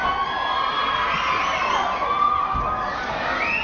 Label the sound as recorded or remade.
recorded